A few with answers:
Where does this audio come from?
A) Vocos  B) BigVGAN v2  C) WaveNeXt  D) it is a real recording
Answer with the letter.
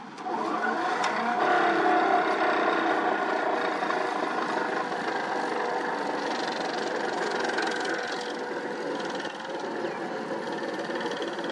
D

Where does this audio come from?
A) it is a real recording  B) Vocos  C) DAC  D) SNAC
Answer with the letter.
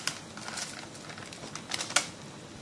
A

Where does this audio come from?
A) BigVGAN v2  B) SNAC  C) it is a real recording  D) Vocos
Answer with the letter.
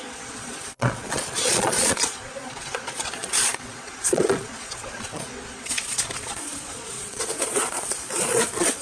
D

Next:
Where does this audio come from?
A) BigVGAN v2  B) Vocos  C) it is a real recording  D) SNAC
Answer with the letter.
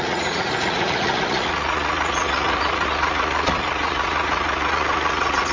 B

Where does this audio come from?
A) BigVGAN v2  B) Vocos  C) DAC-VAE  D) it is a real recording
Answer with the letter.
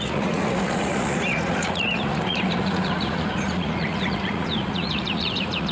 B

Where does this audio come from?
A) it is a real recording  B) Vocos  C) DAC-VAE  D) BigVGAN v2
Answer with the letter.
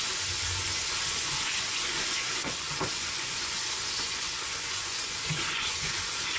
B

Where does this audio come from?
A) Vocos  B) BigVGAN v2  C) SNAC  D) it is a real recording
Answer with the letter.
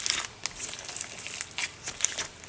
D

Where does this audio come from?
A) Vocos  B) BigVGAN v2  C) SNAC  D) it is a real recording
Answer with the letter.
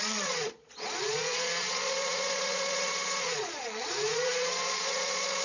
A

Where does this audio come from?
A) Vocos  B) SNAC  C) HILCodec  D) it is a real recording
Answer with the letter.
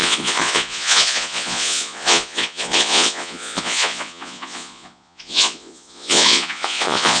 A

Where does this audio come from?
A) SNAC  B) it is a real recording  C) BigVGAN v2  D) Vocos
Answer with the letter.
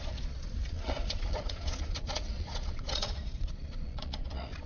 D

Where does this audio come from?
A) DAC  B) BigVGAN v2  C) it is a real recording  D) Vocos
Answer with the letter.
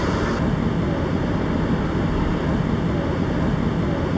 C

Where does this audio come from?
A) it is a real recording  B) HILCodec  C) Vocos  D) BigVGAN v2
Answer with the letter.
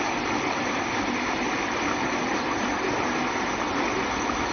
A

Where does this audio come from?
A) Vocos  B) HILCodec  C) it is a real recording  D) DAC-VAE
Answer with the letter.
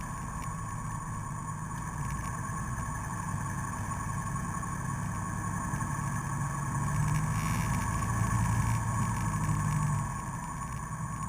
C